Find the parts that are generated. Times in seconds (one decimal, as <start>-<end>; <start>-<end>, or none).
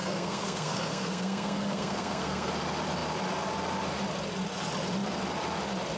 0.0-2.5